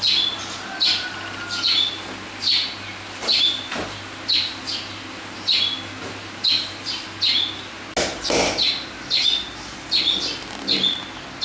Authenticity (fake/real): real